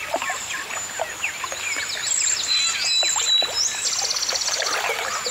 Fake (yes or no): no